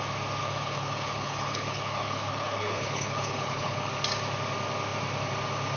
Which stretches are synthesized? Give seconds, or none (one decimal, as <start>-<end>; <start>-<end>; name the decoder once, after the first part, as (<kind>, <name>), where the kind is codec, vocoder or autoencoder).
0.4-3.9 (codec, HILCodec)